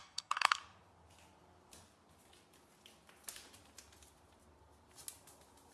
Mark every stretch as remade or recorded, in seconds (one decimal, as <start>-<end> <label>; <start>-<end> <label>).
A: 0.0-0.6 remade; 0.6-5.7 recorded